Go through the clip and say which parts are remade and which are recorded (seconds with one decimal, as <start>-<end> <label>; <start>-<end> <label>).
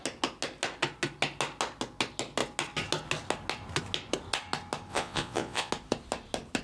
0.0-4.9 recorded; 4.9-5.7 remade; 5.7-6.6 recorded